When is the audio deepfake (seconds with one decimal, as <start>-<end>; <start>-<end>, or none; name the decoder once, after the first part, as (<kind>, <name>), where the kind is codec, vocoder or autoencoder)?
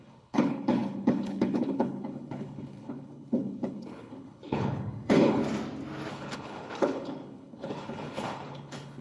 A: 0.0-5.4 (codec, HILCodec); 6.1-9.0